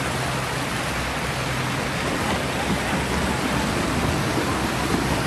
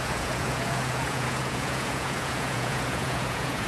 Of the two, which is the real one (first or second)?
first